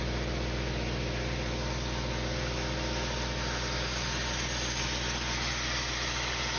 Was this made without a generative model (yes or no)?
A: yes